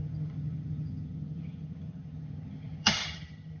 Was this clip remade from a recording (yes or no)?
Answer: yes